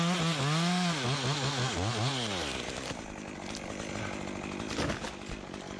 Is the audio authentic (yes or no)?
yes